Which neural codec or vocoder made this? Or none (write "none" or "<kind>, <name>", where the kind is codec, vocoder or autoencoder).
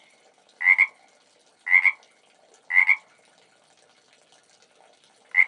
none